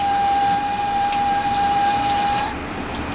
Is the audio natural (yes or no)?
yes